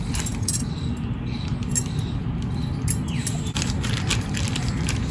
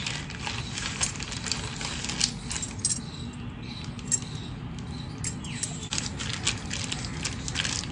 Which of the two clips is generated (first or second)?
first